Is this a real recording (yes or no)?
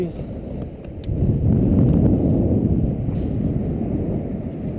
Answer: yes